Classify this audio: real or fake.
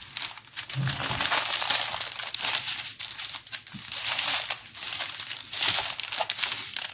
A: real